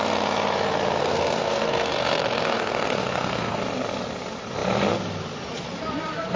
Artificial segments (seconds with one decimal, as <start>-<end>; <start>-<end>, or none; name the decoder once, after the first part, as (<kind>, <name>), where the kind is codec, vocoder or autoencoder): 1.0-3.6 (codec, SNAC)

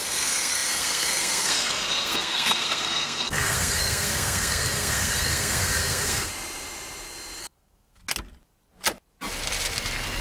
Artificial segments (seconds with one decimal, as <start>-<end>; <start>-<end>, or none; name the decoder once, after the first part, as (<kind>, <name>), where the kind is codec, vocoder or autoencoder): 0.0-6.3 (codec, SNAC); 7.4-8.0

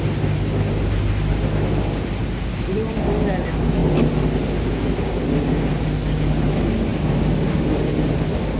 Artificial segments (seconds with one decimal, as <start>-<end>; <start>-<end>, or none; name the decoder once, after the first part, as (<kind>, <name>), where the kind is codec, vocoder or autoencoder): none

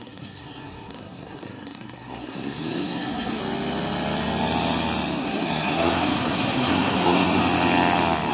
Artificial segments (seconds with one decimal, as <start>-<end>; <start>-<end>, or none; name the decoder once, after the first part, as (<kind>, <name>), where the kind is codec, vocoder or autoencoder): 0.0-3.4 (codec, SNAC); 5.2-7.4

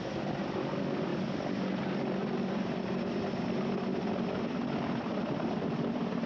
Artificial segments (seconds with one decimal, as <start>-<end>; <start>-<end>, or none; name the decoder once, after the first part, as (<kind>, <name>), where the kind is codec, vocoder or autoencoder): none

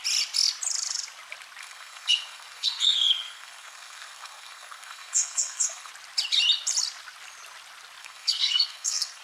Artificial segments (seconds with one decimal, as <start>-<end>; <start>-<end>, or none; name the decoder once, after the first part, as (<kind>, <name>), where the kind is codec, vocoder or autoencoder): 1.6-5.9 (codec, SNAC); 8.0-9.2

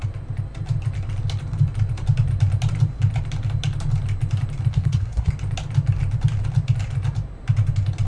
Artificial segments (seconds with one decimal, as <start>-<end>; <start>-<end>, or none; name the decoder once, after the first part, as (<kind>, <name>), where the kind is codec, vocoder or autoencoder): 4.7-5.3 (codec, SNAC)

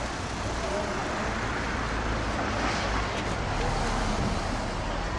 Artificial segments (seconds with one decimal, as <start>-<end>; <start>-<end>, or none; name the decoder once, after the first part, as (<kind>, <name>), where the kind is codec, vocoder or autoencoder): none